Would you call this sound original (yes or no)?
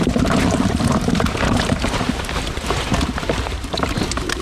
no